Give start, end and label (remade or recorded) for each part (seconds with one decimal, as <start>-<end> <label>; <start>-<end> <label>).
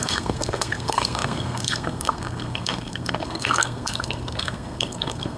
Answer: 0.0-5.4 remade